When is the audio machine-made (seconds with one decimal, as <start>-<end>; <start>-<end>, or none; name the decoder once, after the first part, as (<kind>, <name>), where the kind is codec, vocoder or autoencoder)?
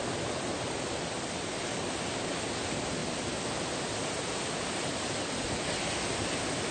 none